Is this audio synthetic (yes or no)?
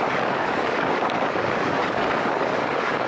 yes